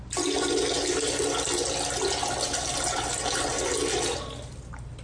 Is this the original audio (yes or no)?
yes